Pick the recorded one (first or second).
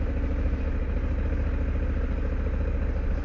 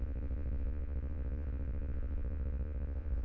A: first